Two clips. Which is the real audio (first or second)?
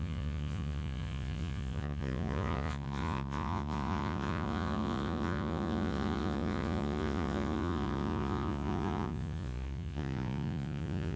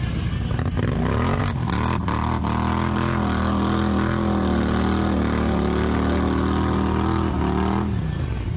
second